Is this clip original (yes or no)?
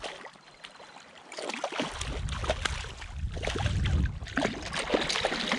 yes